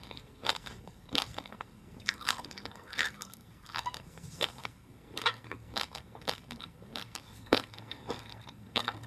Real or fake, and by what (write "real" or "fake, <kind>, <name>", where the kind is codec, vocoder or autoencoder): fake, codec, SNAC